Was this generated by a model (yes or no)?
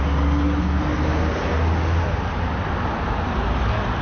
no